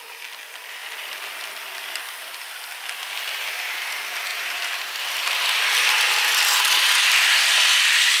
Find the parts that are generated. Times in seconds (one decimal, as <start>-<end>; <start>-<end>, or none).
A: 4.3-6.8